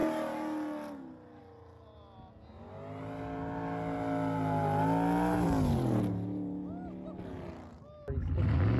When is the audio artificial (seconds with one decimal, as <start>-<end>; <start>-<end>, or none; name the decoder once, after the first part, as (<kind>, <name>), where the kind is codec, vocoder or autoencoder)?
none